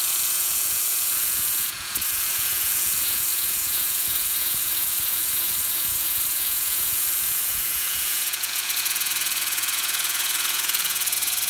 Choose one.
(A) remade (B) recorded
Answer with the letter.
A